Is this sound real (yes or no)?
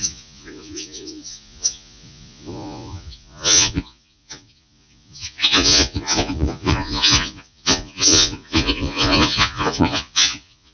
no